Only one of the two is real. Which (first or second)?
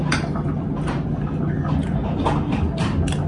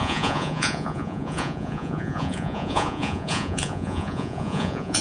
first